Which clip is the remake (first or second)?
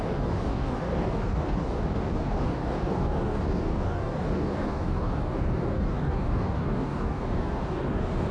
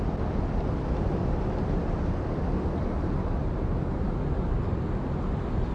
first